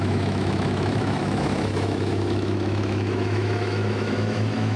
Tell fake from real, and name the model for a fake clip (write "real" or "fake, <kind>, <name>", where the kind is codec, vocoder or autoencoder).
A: fake, autoencoder, DAC-VAE